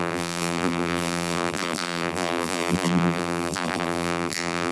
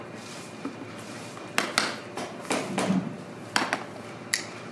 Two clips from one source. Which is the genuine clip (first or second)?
second